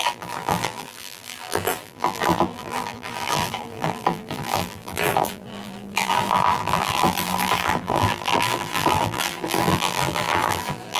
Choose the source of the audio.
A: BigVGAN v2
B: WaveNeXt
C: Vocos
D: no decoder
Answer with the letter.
A